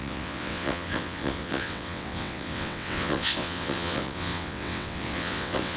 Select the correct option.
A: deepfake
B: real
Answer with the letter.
A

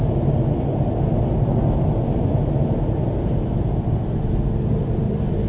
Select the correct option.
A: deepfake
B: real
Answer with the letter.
B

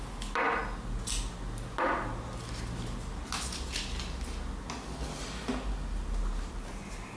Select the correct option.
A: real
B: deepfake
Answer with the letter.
A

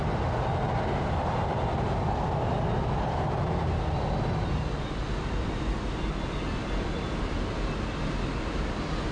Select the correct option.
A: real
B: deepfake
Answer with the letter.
A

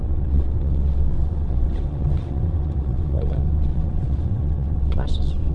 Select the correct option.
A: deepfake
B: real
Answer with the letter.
A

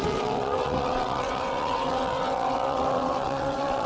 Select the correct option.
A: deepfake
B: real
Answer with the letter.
A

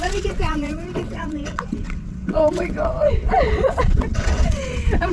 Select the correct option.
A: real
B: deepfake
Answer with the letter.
B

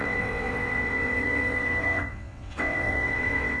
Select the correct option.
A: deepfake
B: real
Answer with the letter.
A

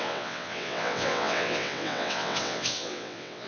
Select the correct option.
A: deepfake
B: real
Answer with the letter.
A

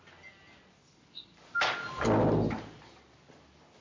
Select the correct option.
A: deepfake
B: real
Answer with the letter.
B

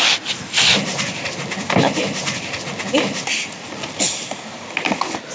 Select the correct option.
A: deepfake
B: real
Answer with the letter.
B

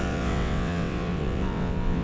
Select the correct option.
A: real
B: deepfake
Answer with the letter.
B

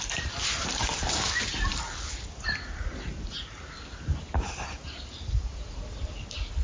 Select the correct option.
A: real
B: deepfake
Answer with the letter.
A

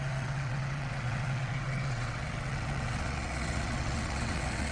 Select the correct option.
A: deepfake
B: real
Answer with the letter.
A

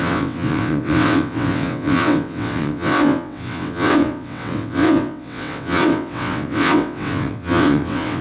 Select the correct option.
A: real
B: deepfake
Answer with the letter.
B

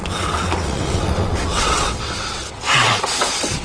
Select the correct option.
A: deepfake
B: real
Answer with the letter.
A